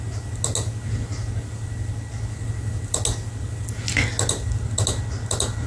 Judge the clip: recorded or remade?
recorded